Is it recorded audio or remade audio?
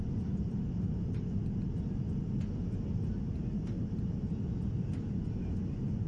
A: recorded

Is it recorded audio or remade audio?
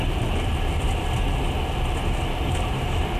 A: recorded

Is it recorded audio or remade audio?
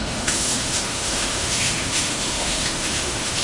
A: remade